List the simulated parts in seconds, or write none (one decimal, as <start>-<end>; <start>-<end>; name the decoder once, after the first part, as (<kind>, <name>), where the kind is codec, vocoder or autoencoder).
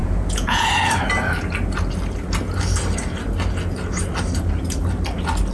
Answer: 0.0-0.7 (vocoder, Vocos)